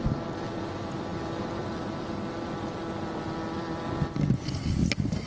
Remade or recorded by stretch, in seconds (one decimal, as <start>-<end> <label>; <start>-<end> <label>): 0.0-5.3 recorded